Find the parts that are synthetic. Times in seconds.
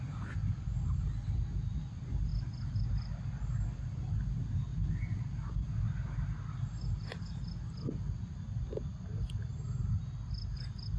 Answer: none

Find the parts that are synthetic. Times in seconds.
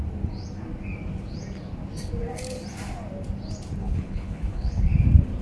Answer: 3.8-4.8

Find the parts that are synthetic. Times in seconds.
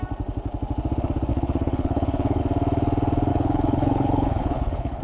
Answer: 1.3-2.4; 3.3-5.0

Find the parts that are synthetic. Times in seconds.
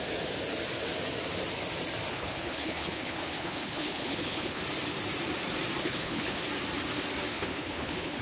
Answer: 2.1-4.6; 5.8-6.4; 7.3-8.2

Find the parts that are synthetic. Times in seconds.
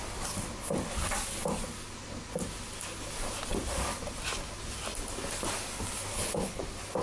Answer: 6.1-6.6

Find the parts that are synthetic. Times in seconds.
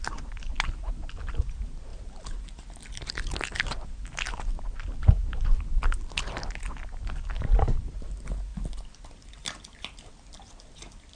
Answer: none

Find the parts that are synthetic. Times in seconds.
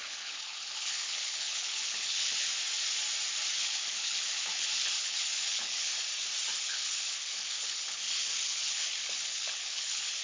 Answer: 0.0-2.5; 3.5-5.9; 6.6-10.2